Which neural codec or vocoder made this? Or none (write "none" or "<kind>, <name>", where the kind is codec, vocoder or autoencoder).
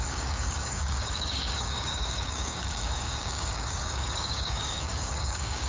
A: codec, DAC